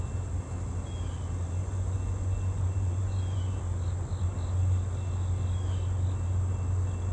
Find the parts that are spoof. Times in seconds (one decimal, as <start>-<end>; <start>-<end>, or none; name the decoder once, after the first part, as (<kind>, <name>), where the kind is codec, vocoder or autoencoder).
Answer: 1.6-3.6 (vocoder, Vocos)